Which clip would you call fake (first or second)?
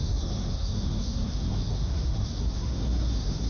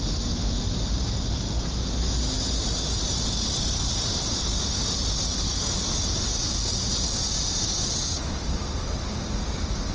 first